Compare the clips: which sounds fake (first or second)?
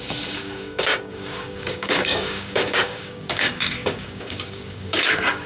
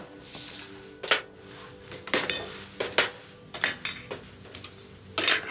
first